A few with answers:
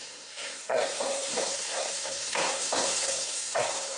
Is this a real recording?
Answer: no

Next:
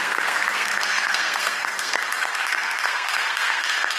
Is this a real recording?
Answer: no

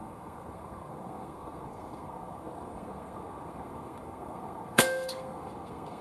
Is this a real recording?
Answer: no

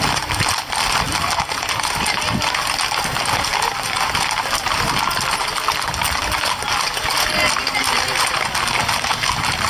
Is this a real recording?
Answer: yes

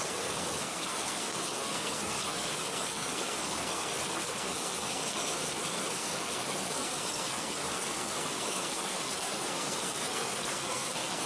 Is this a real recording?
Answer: no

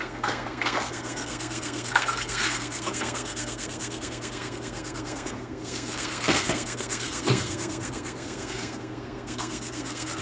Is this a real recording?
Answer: no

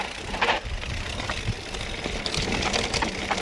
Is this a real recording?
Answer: yes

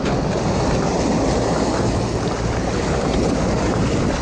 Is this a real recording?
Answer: yes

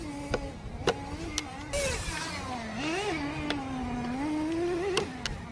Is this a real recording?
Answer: yes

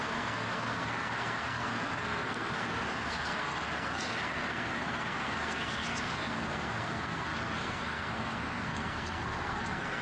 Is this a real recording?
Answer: no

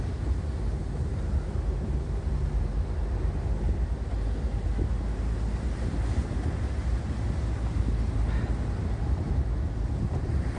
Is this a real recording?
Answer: yes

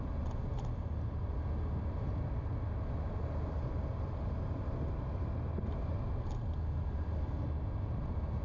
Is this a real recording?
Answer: yes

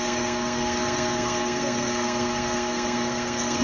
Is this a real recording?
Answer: no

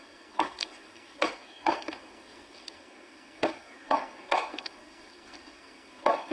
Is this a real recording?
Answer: no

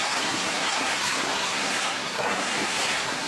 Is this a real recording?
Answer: no